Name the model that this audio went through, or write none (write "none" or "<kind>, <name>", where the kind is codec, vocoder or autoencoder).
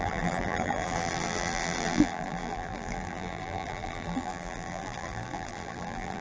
vocoder, BigVGAN v2